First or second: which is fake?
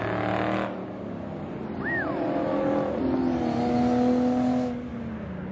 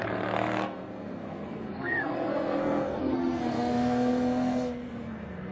second